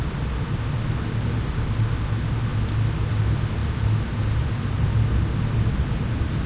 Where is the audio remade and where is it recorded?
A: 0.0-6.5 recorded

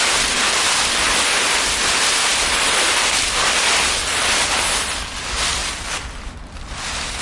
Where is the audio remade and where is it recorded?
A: 0.0-7.2 remade

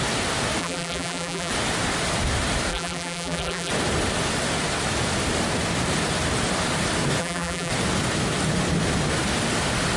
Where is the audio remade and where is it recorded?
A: 0.0-0.6 recorded; 0.6-1.5 remade; 1.5-2.7 recorded; 2.7-3.7 remade; 3.7-7.2 recorded; 7.2-7.7 remade; 7.7-10.0 recorded

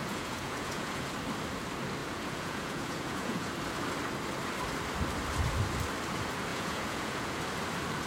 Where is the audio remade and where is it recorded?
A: 0.0-1.1 remade; 1.1-2.0 recorded; 2.0-3.5 remade; 3.5-6.5 recorded; 6.5-7.4 remade; 7.4-8.1 recorded

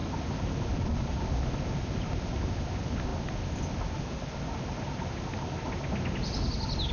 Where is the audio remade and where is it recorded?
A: 0.0-6.9 recorded

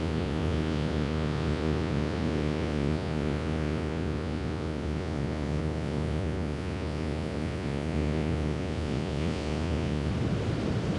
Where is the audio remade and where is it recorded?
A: 0.0-10.1 remade; 10.1-11.0 recorded

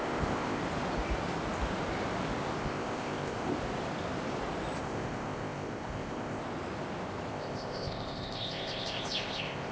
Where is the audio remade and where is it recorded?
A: 0.0-0.6 remade; 0.6-2.6 recorded; 2.6-3.5 remade; 3.5-4.8 recorded; 4.8-6.4 remade; 6.4-7.3 recorded; 7.3-9.7 remade

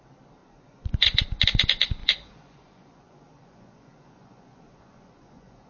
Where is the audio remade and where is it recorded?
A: 0.0-0.4 recorded; 0.4-1.2 remade; 1.2-2.0 recorded; 2.0-5.7 remade